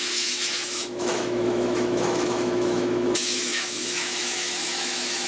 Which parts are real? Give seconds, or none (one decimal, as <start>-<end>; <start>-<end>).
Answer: none